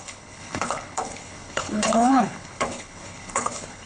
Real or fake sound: fake